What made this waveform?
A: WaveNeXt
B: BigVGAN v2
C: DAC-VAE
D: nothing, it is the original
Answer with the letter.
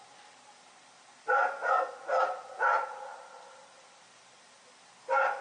D